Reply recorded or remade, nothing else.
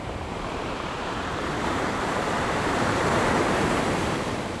remade